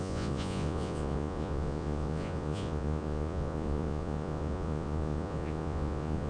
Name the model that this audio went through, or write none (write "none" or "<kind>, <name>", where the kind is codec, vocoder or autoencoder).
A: vocoder, Vocos